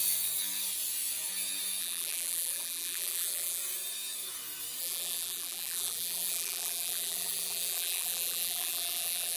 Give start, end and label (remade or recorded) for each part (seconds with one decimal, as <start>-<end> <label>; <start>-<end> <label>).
0.0-1.8 recorded; 1.8-3.6 remade; 3.6-4.8 recorded; 4.8-9.4 remade